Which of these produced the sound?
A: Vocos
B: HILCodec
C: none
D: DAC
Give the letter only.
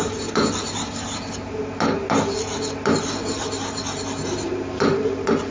C